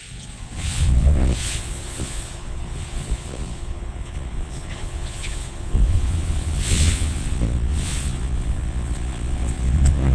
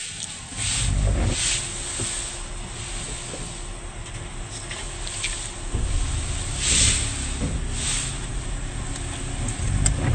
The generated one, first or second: first